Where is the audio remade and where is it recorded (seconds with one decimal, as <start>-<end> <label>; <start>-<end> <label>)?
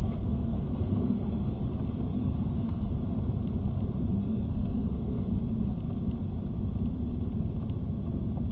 0.0-1.6 remade; 1.6-2.1 recorded; 2.1-2.9 remade; 2.9-4.2 recorded; 4.2-5.3 remade; 5.3-8.5 recorded